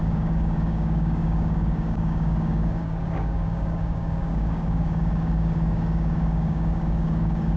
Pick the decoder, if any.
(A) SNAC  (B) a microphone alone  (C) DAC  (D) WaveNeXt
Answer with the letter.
C